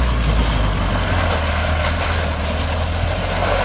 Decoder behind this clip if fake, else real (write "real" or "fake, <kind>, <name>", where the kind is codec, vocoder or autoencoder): real